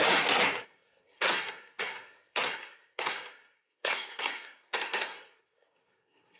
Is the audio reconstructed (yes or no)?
yes